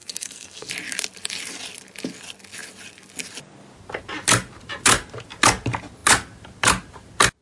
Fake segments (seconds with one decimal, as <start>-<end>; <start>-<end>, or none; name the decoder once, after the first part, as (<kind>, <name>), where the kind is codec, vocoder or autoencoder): 0.0-0.7 (codec, SNAC)